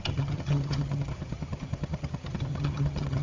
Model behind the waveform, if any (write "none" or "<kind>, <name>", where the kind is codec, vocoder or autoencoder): vocoder, HiFi-GAN